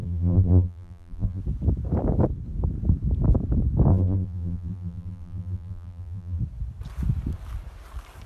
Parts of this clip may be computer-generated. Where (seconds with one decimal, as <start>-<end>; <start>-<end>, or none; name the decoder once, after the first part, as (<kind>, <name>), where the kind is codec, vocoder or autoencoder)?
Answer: 0.0-1.4 (vocoder, BigVGAN v2); 3.9-6.4